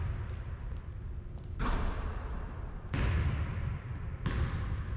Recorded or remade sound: remade